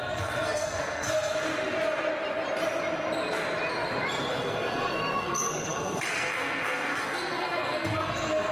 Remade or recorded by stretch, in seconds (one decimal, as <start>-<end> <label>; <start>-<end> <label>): 0.0-1.5 remade; 1.5-4.3 recorded; 4.3-8.5 remade